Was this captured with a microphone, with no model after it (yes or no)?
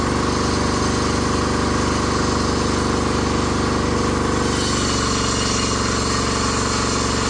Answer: yes